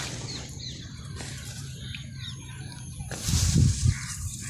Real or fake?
fake